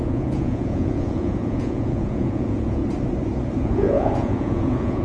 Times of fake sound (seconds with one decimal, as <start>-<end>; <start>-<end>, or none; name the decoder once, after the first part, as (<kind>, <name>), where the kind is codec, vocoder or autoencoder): 0.0-2.8 (vocoder, Vocos); 3.6-5.0